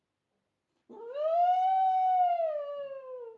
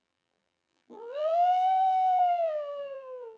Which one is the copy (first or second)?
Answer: second